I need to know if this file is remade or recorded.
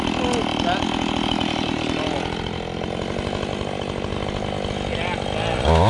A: recorded